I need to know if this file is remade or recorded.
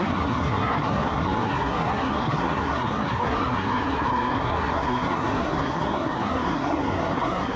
remade